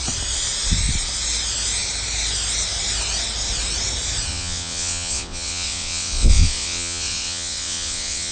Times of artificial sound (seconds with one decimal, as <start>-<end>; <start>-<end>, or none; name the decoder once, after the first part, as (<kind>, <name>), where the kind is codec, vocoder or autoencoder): 4.3-8.3 (vocoder, WaveNeXt)